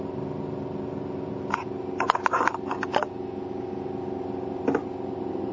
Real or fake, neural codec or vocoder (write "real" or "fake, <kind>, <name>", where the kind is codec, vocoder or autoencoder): real